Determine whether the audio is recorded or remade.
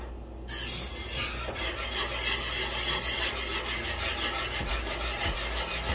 recorded